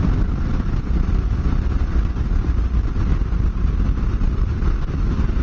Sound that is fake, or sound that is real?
real